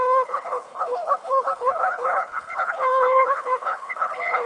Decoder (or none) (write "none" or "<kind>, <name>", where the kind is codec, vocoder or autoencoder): codec, HILCodec